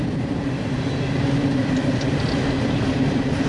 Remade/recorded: remade